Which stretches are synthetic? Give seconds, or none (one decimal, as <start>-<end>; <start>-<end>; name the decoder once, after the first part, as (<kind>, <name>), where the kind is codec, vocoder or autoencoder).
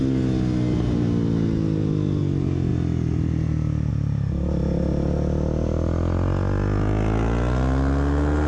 none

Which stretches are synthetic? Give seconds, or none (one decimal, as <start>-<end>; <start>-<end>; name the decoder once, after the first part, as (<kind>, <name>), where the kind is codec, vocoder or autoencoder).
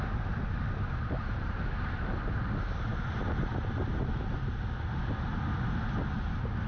none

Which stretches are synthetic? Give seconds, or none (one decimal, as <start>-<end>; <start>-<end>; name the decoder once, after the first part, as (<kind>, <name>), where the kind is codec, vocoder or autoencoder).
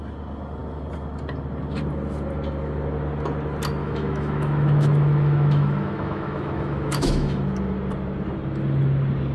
3.8-7.4 (autoencoder, DAC-VAE)